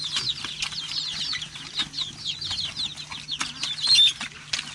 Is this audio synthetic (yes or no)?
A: no